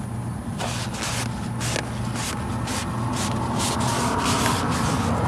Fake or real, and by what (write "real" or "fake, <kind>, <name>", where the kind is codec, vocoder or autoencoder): real